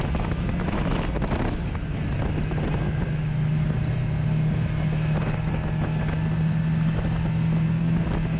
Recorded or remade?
recorded